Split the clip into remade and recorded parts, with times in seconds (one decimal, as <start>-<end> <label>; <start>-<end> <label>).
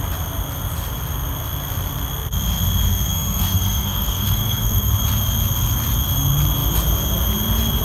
0.0-2.9 recorded; 2.9-4.9 remade; 4.9-7.8 recorded